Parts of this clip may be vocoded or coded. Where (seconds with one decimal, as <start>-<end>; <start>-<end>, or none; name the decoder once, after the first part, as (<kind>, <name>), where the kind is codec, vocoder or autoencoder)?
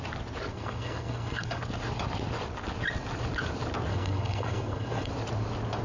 0.5-1.6 (codec, SNAC); 3.9-5.1